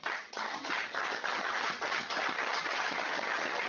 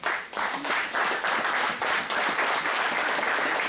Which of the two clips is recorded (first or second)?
second